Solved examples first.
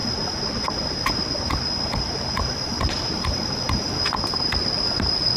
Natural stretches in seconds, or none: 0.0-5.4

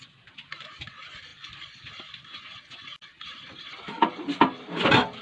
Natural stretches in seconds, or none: 0.0-3.1; 3.6-5.2

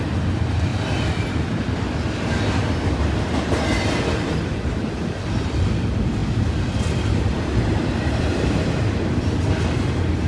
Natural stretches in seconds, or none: 0.0-0.7; 3.0-6.2; 9.1-10.3

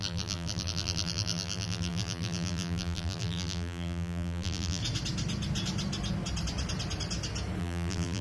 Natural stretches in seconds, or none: 4.8-7.6

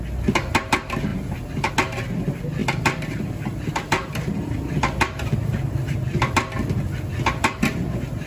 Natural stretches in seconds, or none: 0.0-1.1; 1.7-2.6; 6.3-8.3

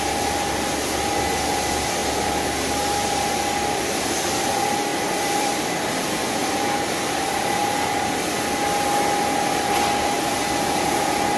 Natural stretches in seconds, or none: 0.0-4.9; 6.5-7.6; 8.1-11.4